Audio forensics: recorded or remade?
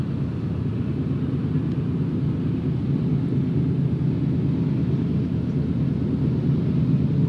recorded